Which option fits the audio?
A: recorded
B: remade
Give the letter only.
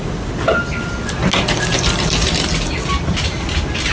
A